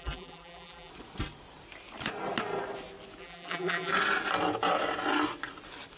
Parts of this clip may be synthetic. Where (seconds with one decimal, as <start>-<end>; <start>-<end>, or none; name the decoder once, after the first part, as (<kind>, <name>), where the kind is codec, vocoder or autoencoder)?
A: 0.0-0.9 (vocoder, BigVGAN v2); 3.2-3.9

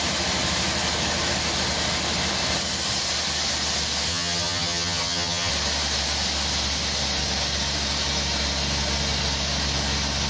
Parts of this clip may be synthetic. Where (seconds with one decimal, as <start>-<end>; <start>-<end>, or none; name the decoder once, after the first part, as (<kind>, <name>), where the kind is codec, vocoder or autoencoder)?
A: 4.1-5.5 (vocoder, HiFi-GAN)

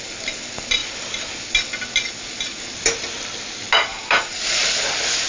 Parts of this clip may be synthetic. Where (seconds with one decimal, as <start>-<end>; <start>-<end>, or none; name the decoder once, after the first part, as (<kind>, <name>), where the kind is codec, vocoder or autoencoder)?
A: none

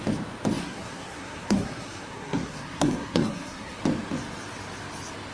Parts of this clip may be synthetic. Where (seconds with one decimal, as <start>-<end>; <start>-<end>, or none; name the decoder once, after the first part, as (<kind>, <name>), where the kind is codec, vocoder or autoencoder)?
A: 0.6-3.8 (codec, SNAC)

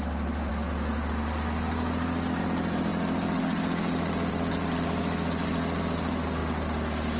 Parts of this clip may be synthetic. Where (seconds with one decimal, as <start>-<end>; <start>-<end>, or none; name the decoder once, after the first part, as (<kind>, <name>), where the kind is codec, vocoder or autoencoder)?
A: none

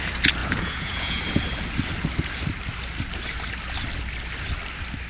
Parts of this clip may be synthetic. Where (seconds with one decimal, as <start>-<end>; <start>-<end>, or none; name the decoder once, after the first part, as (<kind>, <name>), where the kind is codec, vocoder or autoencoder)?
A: 0.4-1.2 (vocoder, Vocos)

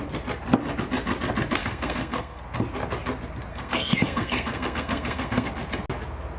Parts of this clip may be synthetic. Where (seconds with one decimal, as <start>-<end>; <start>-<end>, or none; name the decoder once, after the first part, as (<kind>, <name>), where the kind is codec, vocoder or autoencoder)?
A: 1.6-2.4 (codec, SNAC); 3.5-5.5